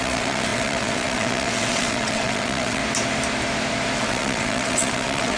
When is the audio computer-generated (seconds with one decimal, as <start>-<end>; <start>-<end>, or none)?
0.0-2.8; 4.0-5.4